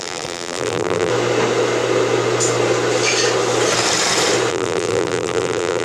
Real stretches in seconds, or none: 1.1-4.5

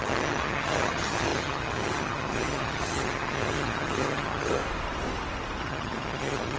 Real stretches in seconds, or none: 4.6-5.6

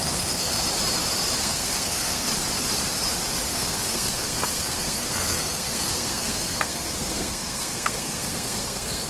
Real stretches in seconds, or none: 0.5-1.4; 2.3-3.6